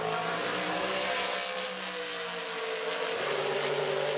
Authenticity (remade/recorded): recorded